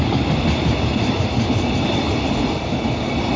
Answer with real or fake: real